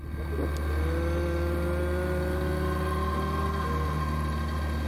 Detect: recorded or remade recorded